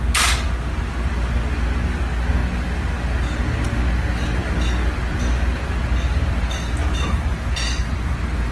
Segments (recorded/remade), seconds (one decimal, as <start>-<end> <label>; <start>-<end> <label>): 0.0-8.5 recorded